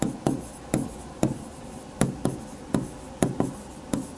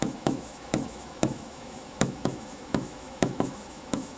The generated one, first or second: second